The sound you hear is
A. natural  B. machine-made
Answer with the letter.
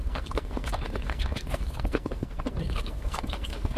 B